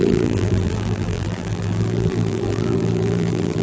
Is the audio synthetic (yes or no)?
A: yes